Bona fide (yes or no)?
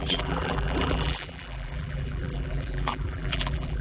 no